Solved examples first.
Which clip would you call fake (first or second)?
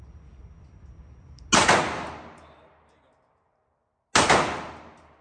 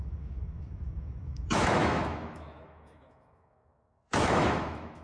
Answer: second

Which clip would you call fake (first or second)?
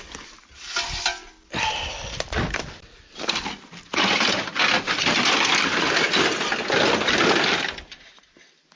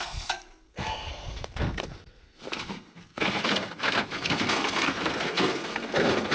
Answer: second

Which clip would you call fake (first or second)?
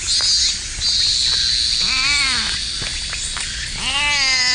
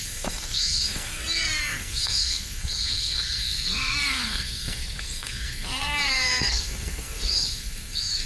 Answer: second